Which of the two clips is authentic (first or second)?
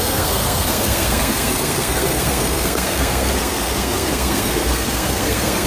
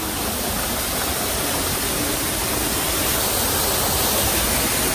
second